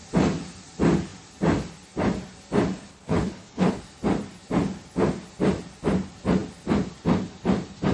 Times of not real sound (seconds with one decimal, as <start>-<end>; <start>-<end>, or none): 2.9-3.8